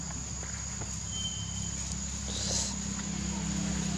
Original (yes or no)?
yes